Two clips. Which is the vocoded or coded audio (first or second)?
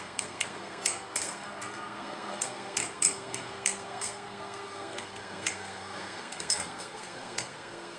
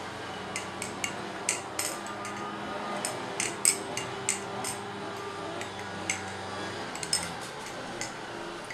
first